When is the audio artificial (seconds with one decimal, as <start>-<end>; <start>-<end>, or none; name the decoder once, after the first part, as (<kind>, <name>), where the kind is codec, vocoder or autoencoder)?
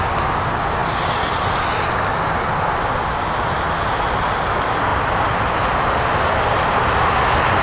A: none